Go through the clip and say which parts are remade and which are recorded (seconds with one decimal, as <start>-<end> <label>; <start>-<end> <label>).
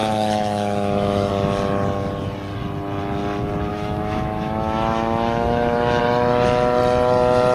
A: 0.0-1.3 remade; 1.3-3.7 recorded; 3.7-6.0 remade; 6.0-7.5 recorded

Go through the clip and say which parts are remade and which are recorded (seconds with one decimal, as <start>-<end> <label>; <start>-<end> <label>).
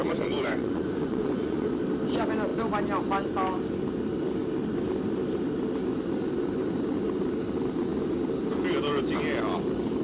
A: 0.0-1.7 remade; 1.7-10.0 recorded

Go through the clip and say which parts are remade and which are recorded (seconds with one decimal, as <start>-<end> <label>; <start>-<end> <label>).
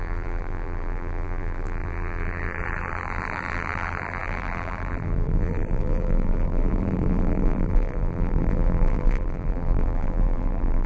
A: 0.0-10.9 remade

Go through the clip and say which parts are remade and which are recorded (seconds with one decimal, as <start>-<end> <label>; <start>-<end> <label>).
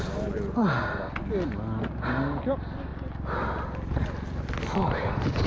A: 0.0-5.5 recorded